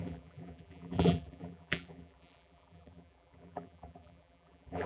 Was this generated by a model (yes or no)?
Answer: yes